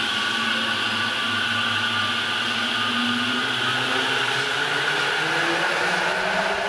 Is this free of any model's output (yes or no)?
yes